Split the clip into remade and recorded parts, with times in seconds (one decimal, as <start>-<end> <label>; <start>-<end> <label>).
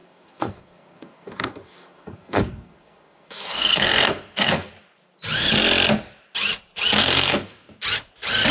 0.0-4.7 remade; 4.7-7.0 recorded; 7.0-7.8 remade; 7.8-8.5 recorded